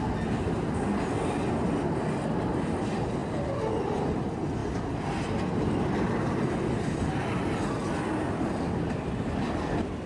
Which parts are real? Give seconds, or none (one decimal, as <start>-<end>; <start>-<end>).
0.0-10.1